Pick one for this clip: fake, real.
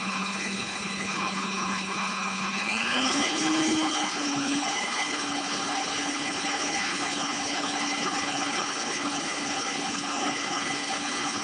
fake